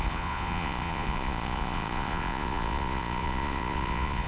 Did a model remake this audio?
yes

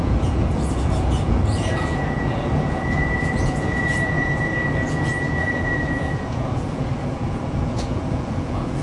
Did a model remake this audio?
yes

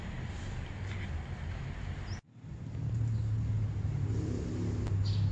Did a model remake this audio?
no